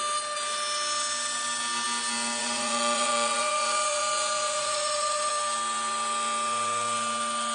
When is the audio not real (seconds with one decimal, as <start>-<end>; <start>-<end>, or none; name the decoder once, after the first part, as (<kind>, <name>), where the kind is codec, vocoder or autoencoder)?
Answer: 2.4-5.3 (vocoder, Vocos)